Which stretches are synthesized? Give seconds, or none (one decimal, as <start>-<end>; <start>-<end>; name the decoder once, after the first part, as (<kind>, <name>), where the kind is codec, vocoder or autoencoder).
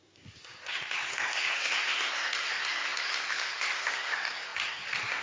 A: 0.0-5.2 (codec, SNAC)